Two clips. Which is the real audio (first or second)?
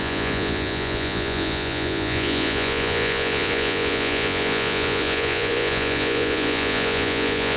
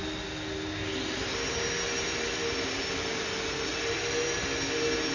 second